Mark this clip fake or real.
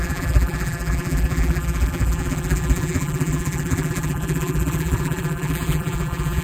fake